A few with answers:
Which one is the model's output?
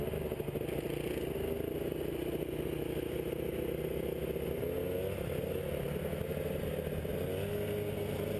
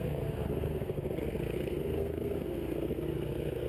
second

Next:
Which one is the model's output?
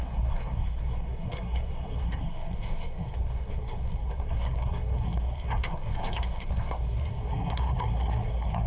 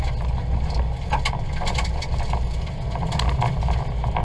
first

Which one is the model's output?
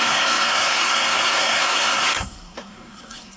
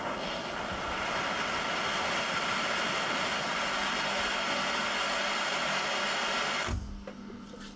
first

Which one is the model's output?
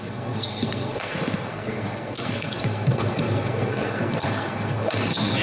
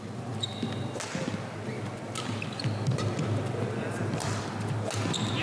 first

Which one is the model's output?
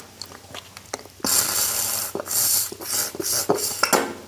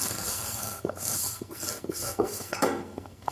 second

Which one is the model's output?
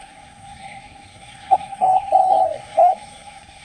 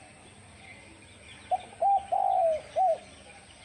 first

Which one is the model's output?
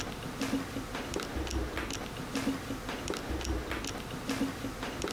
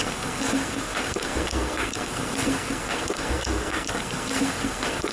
second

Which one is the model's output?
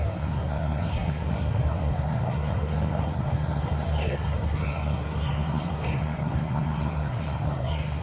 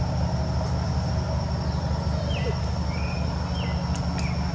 first